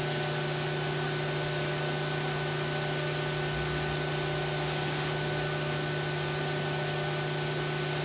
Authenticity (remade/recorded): recorded